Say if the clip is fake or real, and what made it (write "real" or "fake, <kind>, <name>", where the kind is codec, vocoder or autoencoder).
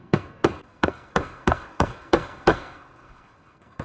fake, codec, SNAC